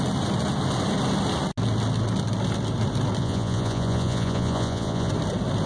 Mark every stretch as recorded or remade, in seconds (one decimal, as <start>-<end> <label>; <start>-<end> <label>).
0.0-3.2 recorded; 3.2-5.1 remade; 5.1-5.7 recorded